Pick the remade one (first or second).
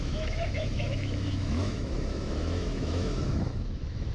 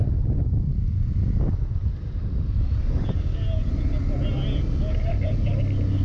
first